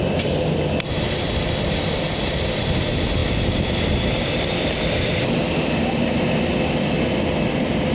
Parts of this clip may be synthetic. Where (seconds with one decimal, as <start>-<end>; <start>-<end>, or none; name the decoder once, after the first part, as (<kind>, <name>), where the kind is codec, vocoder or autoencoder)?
none